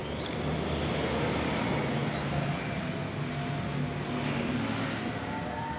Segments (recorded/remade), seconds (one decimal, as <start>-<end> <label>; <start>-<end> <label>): 0.0-5.8 recorded